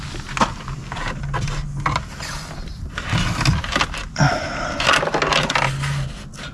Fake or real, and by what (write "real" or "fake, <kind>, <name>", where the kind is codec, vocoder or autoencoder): real